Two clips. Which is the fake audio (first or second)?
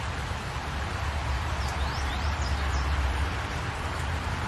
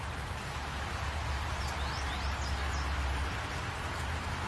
first